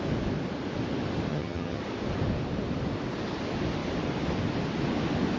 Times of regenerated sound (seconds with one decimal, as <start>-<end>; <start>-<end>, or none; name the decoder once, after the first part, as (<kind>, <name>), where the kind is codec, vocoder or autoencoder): 1.3-1.8 (vocoder, HiFi-GAN)